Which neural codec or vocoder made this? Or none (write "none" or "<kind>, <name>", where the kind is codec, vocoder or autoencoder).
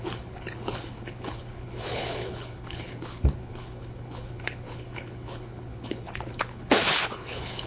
codec, HILCodec